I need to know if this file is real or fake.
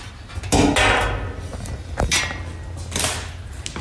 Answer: real